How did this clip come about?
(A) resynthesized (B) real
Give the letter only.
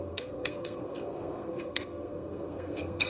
A